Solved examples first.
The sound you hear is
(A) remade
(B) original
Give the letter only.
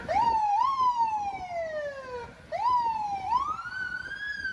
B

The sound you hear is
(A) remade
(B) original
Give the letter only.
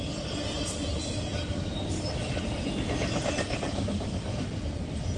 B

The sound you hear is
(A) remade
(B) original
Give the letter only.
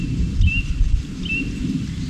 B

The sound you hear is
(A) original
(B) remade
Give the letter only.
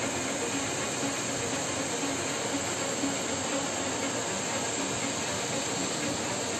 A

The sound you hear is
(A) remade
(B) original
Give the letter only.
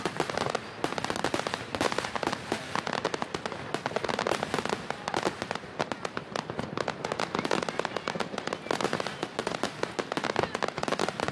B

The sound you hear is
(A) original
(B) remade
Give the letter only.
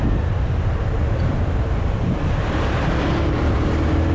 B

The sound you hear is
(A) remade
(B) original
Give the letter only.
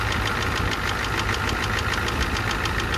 B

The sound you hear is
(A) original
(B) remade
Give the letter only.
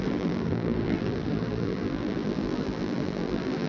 B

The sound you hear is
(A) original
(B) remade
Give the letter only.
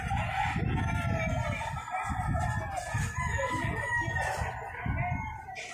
A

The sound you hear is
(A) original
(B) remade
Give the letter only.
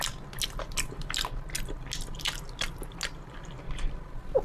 A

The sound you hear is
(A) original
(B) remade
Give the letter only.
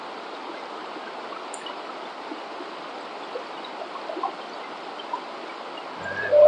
A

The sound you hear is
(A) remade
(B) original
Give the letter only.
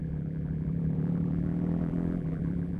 A